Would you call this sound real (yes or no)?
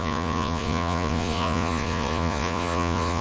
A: no